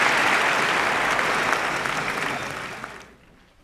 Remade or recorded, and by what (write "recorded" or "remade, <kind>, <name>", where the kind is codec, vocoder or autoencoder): recorded